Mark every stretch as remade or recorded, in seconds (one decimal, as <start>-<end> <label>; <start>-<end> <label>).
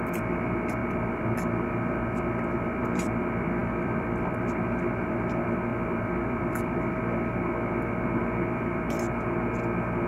0.0-10.1 remade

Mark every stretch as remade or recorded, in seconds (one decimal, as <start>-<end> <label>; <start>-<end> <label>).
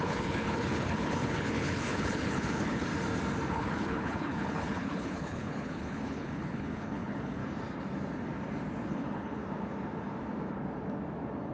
0.0-2.9 remade; 2.9-3.5 recorded; 3.5-7.4 remade; 7.4-8.9 recorded; 8.9-9.4 remade; 9.4-11.5 recorded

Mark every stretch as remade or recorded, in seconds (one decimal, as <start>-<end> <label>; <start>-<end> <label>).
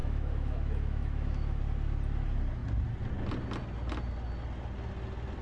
0.0-1.6 remade; 1.6-5.4 recorded